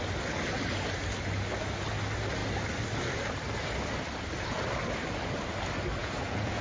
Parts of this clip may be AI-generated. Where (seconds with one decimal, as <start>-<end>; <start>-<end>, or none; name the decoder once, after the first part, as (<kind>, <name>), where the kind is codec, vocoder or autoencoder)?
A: 6.0-6.6 (vocoder, Vocos)